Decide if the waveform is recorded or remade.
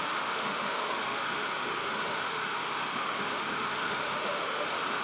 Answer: remade